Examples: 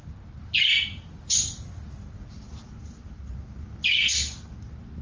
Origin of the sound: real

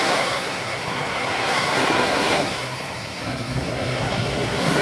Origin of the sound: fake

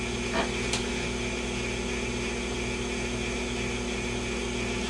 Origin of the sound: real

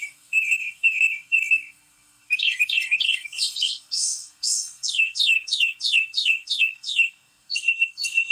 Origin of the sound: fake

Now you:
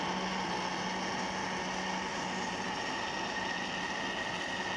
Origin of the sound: real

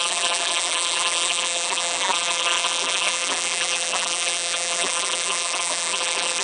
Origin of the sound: fake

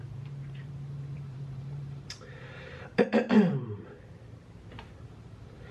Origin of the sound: fake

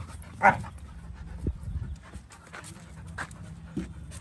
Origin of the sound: real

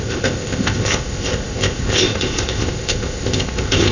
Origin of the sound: fake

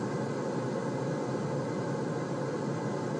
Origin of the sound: real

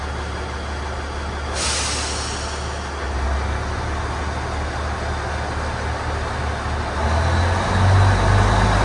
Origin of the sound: real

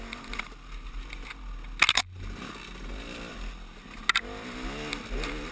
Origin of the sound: real